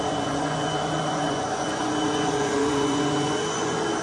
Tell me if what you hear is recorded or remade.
remade